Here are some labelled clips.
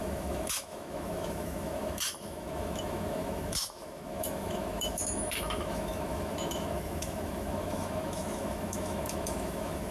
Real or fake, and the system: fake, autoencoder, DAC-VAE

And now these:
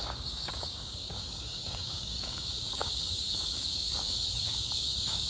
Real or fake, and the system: fake, codec, DAC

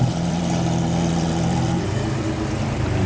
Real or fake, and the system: fake, vocoder, BigVGAN v2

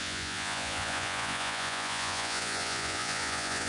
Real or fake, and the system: fake, vocoder, Vocos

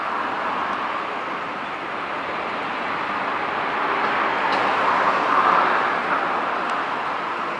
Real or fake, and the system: real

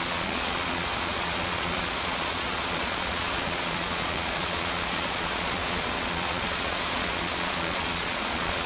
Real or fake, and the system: fake, vocoder, Vocos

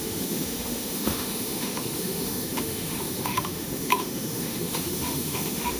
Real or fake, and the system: fake, autoencoder, DAC-VAE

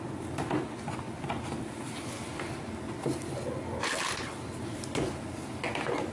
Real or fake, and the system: real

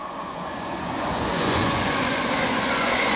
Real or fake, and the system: fake, vocoder, Vocos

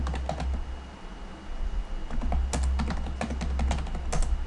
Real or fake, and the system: real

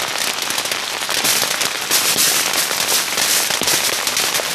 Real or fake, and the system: real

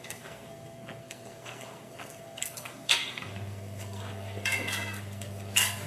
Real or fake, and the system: fake, codec, SNAC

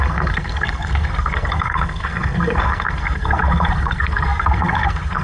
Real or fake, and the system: fake, codec, SNAC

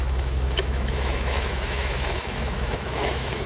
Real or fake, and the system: fake, autoencoder, DAC-VAE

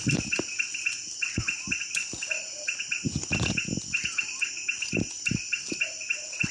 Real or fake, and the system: real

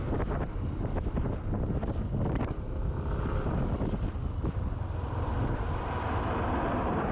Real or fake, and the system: real